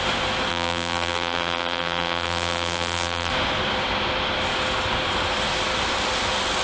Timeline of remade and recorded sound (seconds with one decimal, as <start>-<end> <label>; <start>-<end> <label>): 0.0-0.5 recorded; 0.5-3.3 remade; 3.3-6.6 recorded